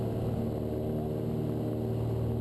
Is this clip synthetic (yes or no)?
no